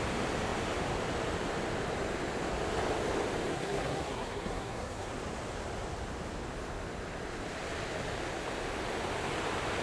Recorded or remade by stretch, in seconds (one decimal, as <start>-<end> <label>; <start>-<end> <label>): 0.0-3.5 recorded; 3.5-5.1 remade; 5.1-9.8 recorded

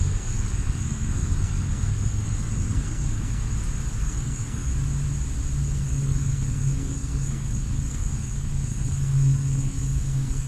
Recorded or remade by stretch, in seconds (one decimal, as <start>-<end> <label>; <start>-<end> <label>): 0.0-3.5 remade; 3.5-4.0 recorded; 4.0-4.7 remade; 4.7-5.7 recorded; 5.7-10.5 remade